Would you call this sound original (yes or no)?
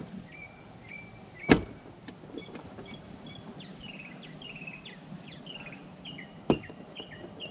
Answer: yes